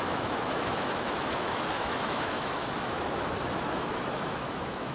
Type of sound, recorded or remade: remade